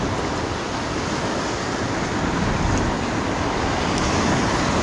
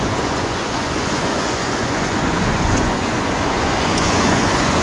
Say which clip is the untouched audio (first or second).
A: first